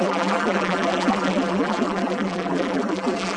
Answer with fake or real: fake